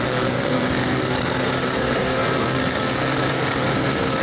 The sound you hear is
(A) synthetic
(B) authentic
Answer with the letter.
A